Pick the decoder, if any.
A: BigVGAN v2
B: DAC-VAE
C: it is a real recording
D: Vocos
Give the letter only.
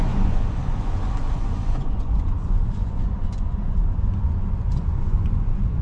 D